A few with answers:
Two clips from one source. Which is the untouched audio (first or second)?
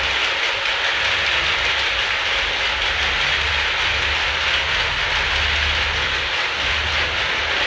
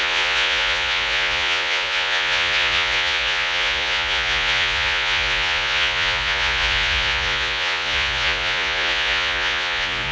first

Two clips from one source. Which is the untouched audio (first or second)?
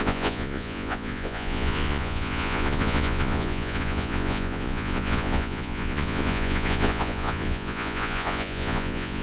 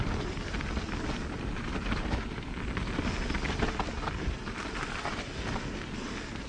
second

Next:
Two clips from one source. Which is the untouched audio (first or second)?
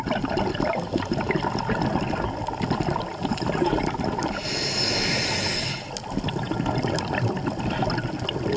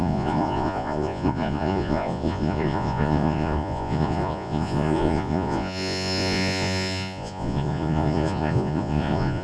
first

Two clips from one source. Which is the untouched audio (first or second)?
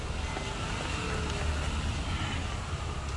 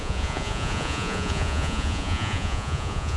first